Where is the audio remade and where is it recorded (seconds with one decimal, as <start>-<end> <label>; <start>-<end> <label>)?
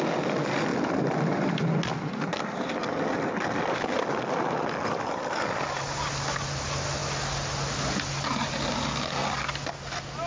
0.0-10.3 recorded